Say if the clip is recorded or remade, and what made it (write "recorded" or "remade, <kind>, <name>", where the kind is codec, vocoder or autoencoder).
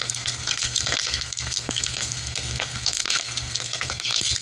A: remade, codec, SNAC